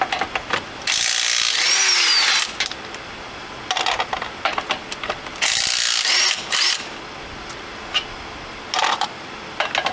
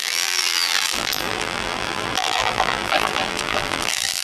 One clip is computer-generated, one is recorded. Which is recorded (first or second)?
first